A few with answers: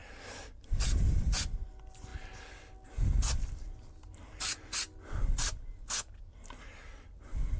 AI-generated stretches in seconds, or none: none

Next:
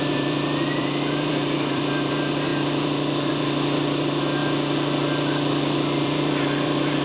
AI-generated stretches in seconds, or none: 0.0-4.4 (vocoder, BigVGAN v2); 6.0-7.0

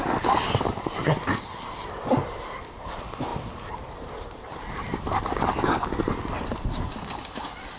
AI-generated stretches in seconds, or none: 2.2-2.9 (vocoder, BigVGAN v2); 3.3-5.5

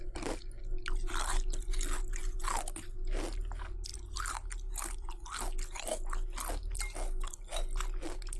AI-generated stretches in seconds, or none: 3.9-5.4 (vocoder, BigVGAN v2)